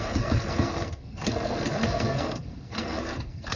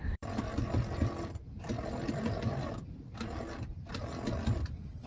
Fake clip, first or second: first